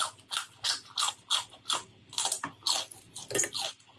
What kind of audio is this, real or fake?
real